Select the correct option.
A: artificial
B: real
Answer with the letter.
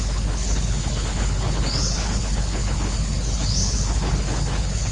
A